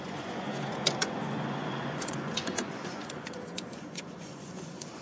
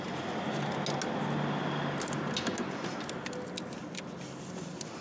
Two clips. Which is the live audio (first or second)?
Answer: second